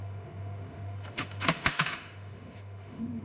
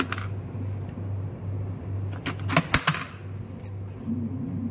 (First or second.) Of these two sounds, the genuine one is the second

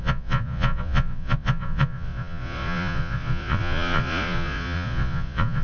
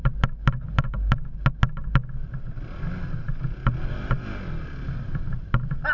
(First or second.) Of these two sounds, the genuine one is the second